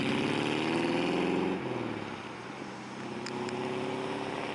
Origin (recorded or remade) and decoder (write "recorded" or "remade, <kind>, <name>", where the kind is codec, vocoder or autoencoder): recorded